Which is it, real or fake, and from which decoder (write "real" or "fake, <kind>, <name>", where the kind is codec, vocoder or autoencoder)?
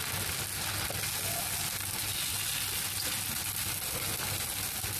real